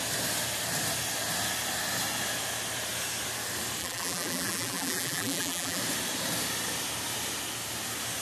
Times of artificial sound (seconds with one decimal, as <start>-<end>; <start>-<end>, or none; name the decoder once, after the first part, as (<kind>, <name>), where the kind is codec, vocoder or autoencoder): 3.8-5.8 (vocoder, BigVGAN v2)